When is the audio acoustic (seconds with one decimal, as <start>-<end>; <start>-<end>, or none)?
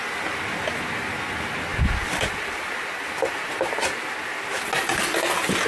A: 0.0-5.7